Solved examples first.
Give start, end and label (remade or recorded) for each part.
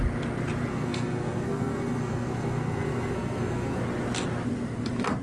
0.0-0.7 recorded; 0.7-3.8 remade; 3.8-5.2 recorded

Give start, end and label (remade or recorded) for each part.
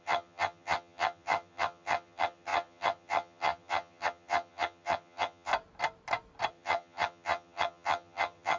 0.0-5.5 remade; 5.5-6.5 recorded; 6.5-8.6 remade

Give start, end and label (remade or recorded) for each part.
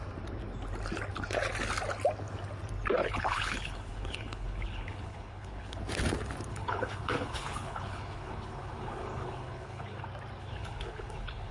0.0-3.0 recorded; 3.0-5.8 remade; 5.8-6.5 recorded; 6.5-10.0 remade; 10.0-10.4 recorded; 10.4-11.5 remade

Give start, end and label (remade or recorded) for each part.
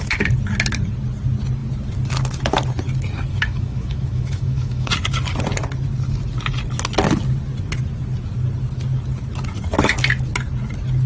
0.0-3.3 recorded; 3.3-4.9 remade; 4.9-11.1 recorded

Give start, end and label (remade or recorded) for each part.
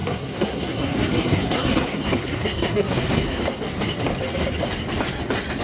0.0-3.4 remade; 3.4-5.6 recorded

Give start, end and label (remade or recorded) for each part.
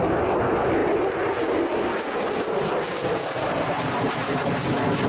0.0-5.1 recorded